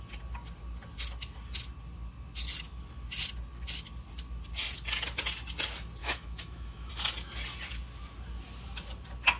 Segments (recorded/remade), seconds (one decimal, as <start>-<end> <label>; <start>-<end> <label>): 0.0-6.0 recorded; 6.0-6.9 remade; 6.9-9.4 recorded